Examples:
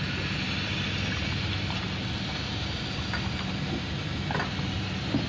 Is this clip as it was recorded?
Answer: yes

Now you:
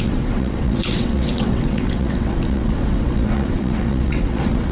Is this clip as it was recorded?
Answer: no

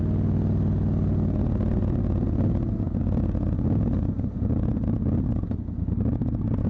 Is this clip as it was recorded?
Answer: yes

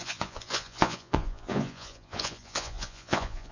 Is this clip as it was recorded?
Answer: no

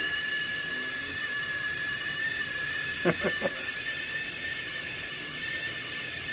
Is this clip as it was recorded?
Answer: yes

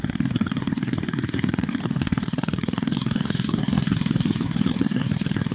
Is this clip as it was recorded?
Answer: no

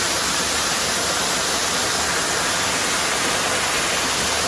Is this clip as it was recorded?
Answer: yes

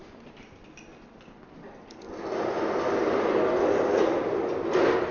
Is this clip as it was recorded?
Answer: yes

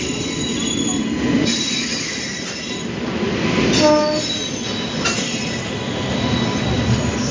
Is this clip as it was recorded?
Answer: yes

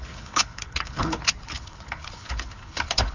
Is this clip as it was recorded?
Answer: no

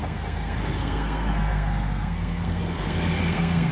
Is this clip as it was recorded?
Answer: no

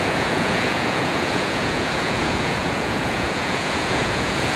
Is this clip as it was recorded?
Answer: no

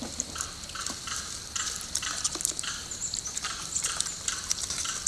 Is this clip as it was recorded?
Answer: yes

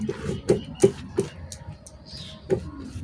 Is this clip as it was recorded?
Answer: yes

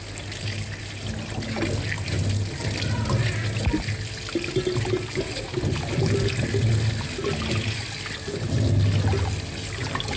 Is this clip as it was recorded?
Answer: yes